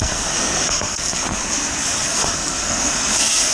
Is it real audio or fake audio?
fake